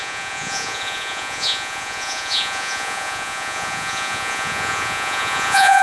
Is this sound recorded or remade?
remade